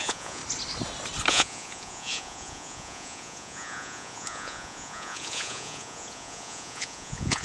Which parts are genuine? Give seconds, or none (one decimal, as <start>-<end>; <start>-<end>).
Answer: 0.4-1.3